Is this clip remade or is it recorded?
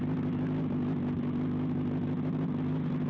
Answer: recorded